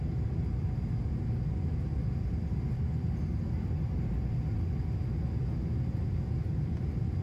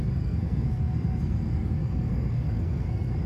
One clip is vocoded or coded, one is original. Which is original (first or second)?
first